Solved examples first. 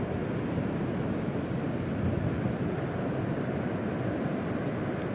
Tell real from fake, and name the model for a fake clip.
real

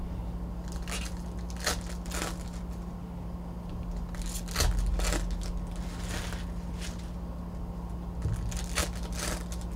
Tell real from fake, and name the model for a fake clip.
real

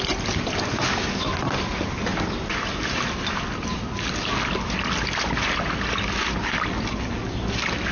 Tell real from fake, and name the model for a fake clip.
real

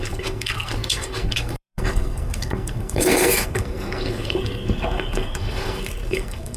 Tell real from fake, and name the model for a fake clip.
fake, codec, SNAC